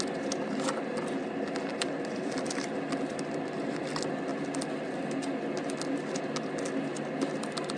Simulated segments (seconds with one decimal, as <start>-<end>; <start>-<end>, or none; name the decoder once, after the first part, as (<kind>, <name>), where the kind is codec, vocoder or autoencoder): 1.7-2.8 (vocoder, BigVGAN v2)

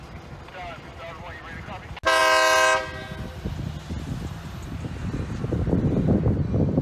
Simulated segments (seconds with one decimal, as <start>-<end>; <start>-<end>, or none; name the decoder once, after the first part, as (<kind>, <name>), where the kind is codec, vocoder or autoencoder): 0.5-1.8 (vocoder, BigVGAN v2)

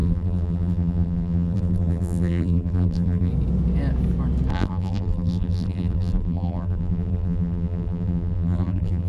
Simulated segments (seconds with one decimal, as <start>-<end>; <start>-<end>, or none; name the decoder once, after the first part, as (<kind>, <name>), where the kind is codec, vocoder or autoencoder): 0.0-3.3 (vocoder, BigVGAN v2); 4.5-9.1

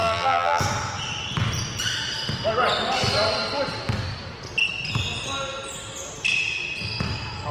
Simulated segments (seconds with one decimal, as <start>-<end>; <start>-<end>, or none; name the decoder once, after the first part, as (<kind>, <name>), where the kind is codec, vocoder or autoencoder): 0.0-0.6 (vocoder, BigVGAN v2)